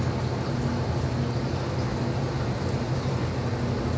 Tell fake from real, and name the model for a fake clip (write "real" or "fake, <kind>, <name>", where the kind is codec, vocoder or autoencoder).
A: real